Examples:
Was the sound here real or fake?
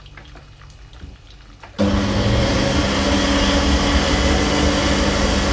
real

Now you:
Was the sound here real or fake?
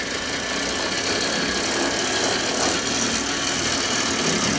real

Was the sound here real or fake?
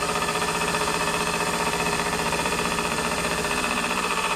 fake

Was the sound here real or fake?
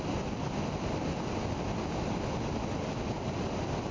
real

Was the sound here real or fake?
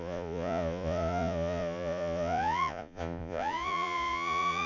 fake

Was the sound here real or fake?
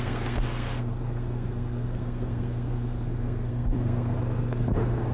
fake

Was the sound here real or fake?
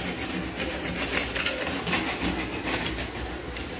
real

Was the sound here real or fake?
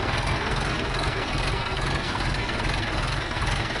fake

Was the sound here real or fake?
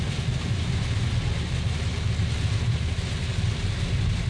real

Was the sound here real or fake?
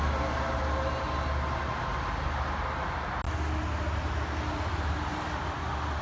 real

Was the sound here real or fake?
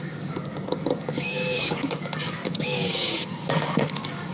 fake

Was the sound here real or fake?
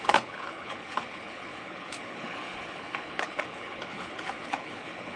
fake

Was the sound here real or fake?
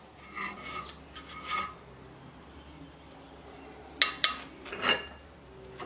real